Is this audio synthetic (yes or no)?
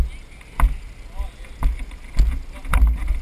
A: no